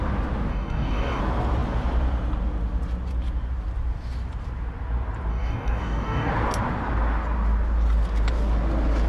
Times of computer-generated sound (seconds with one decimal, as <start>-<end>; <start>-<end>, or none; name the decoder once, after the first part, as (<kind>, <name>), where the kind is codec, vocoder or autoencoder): 0.5-1.2 (codec, DAC); 5.3-6.3